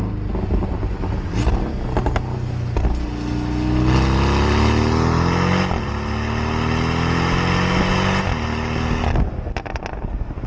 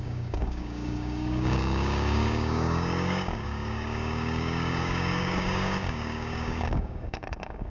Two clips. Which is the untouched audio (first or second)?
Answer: first